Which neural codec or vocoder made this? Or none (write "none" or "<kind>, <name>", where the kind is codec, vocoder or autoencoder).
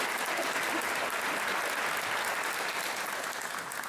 none